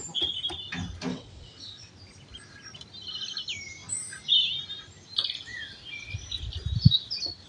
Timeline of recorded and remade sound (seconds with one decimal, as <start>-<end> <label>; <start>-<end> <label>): 0.0-1.1 recorded; 1.1-1.9 remade; 1.9-7.5 recorded